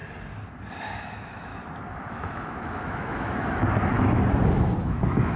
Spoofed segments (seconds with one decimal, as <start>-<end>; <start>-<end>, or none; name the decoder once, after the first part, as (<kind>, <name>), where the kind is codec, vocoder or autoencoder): 0.8-1.5 (autoencoder, DAC-VAE); 2.1-3.6; 4.8-5.4